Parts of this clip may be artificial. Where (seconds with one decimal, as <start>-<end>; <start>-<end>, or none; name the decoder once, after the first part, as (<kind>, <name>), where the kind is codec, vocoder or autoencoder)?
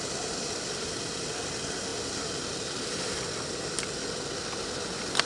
none